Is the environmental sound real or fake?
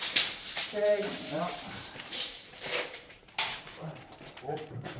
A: fake